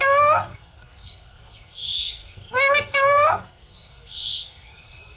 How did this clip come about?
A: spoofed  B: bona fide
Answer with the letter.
A